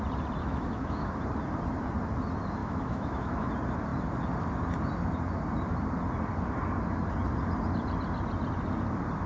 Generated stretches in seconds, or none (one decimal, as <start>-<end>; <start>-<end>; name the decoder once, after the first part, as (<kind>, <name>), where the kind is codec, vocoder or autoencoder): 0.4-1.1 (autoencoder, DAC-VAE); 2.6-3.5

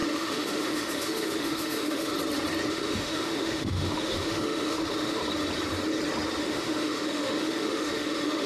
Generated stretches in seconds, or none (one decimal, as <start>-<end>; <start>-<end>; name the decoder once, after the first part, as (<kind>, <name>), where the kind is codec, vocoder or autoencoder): 0.0-2.1 (autoencoder, DAC-VAE); 2.7-5.2; 6.4-8.5

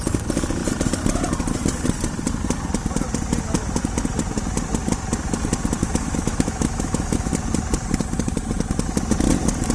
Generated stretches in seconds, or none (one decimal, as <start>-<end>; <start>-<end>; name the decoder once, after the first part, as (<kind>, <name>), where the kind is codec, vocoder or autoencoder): 5.8-7.3 (autoencoder, DAC-VAE)

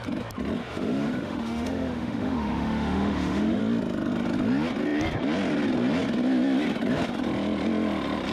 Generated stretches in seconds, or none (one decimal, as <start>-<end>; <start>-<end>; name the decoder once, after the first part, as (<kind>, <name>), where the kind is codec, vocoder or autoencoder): 0.6-3.6 (autoencoder, DAC-VAE)

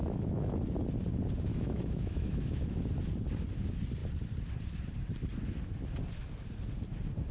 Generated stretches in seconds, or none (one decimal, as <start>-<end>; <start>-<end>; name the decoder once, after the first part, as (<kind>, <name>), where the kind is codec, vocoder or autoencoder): 0.0-0.6 (autoencoder, DAC-VAE); 1.5-2.8